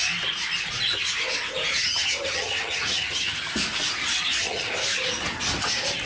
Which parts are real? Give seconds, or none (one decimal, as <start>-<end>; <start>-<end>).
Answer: 0.0-1.7; 3.5-4.1; 4.7-6.1